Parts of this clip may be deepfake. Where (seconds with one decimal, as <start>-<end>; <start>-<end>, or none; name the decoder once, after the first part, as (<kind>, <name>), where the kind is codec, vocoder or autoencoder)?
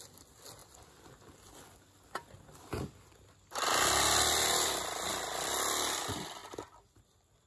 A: none